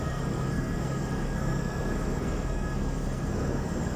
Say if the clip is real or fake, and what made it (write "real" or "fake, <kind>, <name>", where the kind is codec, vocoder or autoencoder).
fake, codec, SNAC